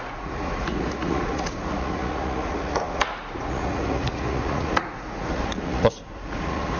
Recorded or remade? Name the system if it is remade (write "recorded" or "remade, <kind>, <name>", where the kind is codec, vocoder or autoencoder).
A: remade, vocoder, Vocos